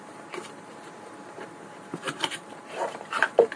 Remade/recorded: remade